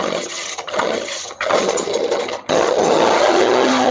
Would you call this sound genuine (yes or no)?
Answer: no